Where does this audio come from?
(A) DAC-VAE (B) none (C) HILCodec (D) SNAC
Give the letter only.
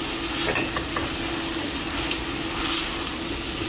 B